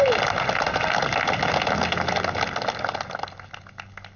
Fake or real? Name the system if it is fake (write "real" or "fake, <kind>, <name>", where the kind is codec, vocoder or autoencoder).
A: real